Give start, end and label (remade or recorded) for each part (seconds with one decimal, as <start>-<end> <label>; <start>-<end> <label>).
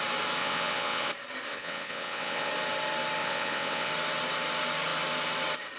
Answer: 0.0-0.4 recorded; 0.4-1.1 remade; 1.1-1.5 recorded; 1.5-2.5 remade; 2.5-3.2 recorded; 3.2-3.9 remade; 3.9-5.8 recorded